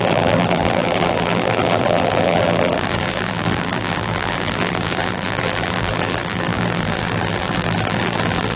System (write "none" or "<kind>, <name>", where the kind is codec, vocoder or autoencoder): vocoder, BigVGAN v2